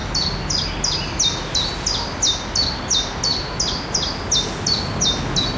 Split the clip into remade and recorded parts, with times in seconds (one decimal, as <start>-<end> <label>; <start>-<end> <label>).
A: 0.0-5.6 recorded